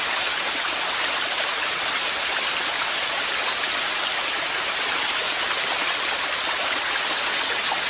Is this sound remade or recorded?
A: recorded